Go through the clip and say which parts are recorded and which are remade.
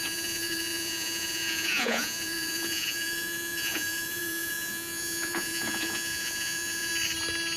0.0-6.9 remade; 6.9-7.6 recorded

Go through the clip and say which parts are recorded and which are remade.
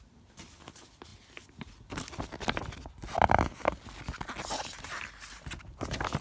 0.0-6.2 recorded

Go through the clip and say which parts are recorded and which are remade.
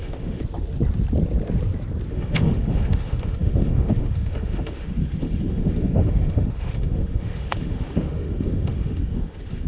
0.0-0.4 remade; 0.4-2.1 recorded; 2.1-9.7 remade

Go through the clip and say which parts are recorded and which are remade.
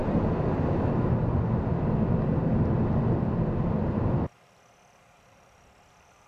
0.0-6.3 recorded